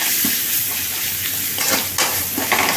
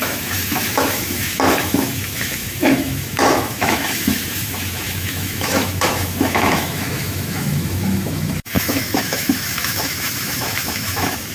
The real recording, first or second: first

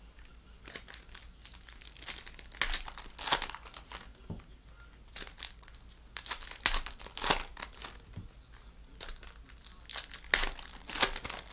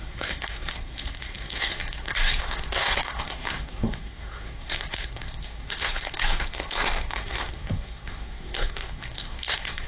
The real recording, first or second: first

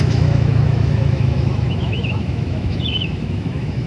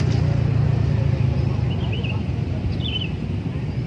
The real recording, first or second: second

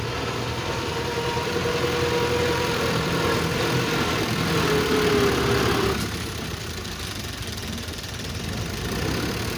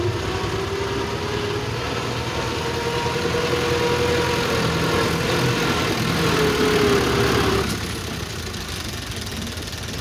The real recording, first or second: second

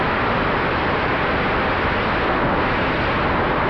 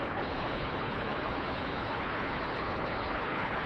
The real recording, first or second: first